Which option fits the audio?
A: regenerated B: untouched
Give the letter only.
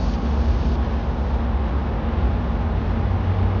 B